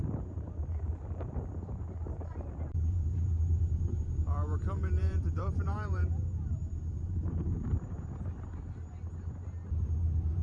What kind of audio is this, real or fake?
fake